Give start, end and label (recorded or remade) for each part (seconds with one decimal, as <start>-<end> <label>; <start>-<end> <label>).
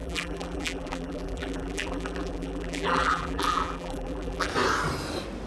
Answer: 0.0-4.5 remade; 4.5-5.5 recorded